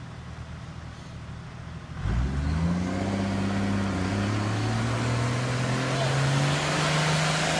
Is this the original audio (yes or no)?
yes